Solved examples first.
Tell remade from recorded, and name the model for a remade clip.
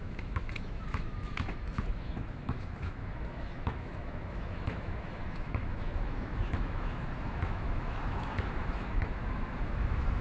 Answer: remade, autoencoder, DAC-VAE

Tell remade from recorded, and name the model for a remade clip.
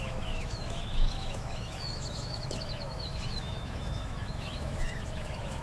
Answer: remade, autoencoder, DAC-VAE